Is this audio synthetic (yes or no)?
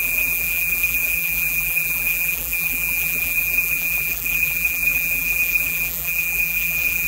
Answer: yes